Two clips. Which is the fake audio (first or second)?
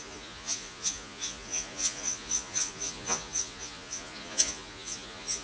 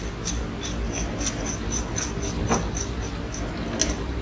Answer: first